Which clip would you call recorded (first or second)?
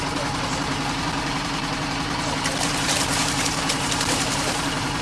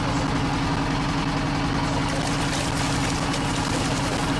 second